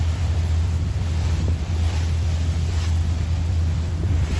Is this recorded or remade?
remade